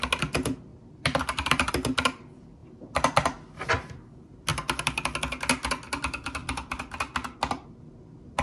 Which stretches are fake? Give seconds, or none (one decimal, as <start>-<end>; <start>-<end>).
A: 0.7-1.7